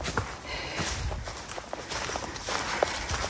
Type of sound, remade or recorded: recorded